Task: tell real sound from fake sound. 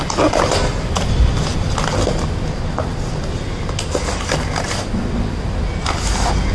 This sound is real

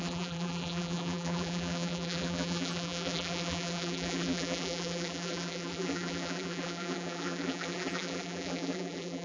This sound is fake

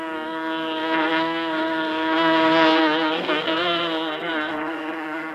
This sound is fake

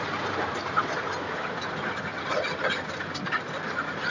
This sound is real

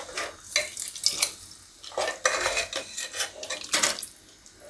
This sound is real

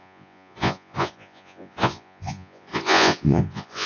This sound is fake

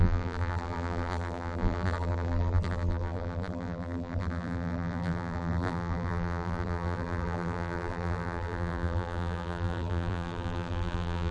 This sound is fake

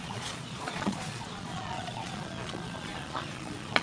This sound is fake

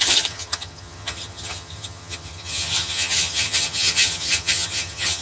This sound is fake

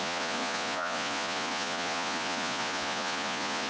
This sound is fake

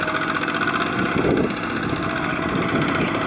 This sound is real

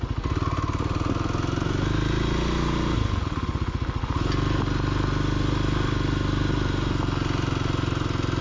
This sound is real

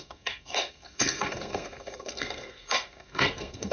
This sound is fake